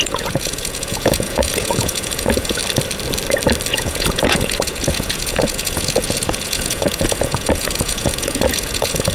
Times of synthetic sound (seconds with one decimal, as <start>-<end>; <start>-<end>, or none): 0.0-2.6; 3.7-9.1

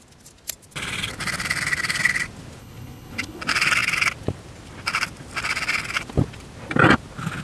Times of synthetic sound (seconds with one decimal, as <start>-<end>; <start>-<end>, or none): 2.6-3.4

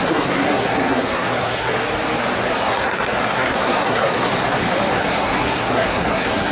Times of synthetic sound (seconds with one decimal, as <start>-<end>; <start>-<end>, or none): 0.0-1.7; 2.5-4.3; 4.9-6.5

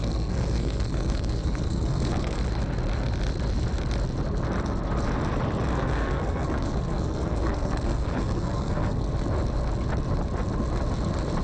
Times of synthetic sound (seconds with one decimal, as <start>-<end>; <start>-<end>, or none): 0.0-2.4; 5.7-9.1

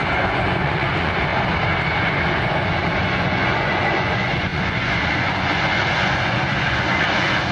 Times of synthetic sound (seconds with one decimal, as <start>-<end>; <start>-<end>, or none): 0.0-1.3; 1.9-7.5